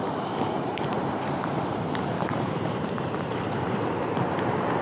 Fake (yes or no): yes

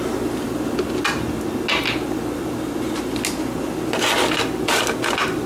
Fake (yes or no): no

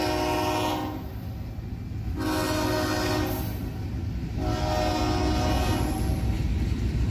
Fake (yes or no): no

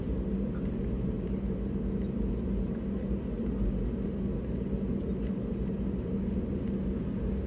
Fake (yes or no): no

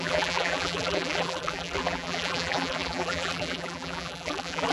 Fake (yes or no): yes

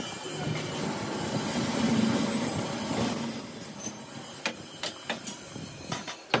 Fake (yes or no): no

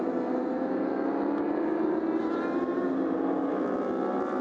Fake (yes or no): no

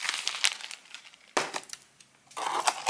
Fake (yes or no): no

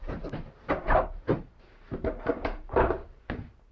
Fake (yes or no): yes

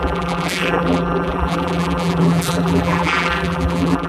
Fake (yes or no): yes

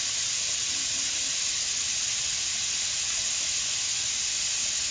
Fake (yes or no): no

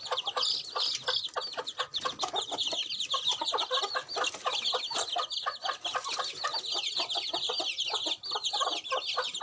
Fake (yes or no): no